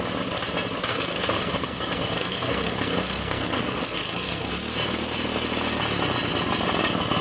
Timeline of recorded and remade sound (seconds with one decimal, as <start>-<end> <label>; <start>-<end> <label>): 0.0-0.9 recorded; 0.9-4.5 remade; 4.5-7.2 recorded